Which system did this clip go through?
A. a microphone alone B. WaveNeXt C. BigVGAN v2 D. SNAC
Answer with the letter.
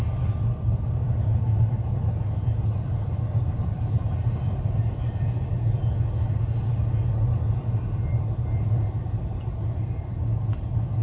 A